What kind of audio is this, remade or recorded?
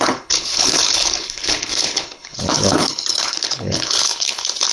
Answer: remade